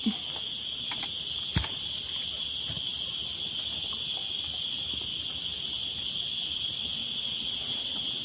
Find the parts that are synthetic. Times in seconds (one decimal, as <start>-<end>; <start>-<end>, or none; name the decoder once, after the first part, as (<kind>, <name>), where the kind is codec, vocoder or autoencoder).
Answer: 7.0-8.2 (vocoder, WaveNeXt)